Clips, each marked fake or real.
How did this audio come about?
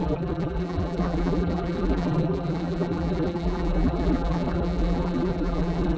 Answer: fake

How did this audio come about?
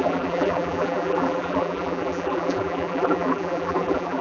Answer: fake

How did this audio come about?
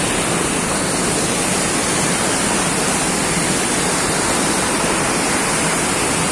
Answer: real